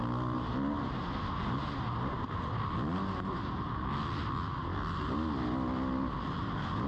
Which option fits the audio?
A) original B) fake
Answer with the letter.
A